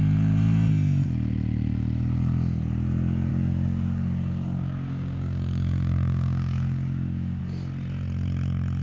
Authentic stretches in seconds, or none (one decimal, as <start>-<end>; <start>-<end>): 0.0-3.3; 7.4-8.8